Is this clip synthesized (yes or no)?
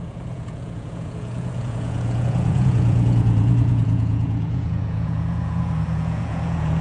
yes